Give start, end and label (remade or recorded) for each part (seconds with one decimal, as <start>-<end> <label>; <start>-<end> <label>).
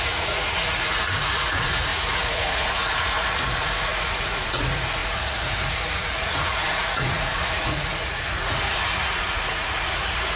0.0-10.4 remade